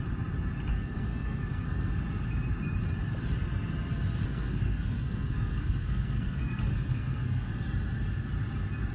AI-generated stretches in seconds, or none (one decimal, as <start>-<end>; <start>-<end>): 0.7-1.9; 4.2-7.5

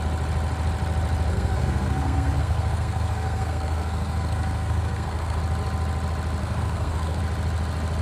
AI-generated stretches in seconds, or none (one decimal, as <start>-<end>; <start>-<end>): 1.3-5.4; 6.4-7.2